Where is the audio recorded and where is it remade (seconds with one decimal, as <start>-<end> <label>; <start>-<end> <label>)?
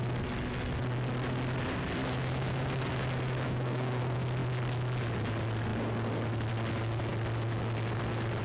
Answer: 0.0-2.0 recorded; 2.0-4.0 remade; 4.0-8.4 recorded